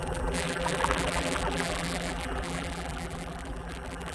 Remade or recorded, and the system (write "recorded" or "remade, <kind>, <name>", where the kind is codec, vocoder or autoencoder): remade, vocoder, BigVGAN v2